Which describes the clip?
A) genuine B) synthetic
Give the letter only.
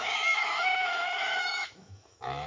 B